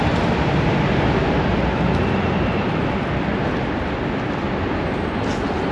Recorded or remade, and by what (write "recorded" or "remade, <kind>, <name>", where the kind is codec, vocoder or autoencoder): recorded